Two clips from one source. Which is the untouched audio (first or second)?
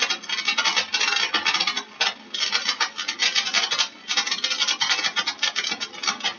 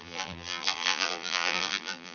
first